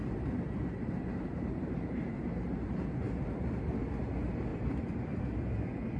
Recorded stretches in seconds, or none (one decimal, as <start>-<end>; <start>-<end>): 3.6-4.5; 5.2-6.0